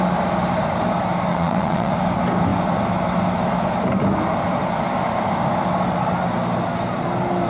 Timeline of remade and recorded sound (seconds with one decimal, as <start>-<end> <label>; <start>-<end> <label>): 0.0-1.3 recorded; 1.3-1.9 remade; 1.9-7.5 recorded